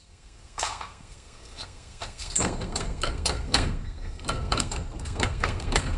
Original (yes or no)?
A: no